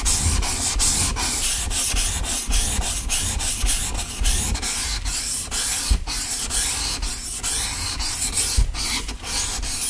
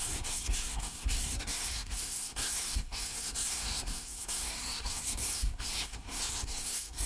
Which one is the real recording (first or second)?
first